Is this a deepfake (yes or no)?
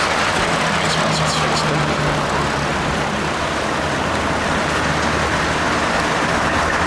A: no